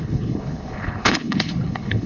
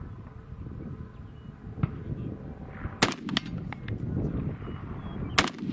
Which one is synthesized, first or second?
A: first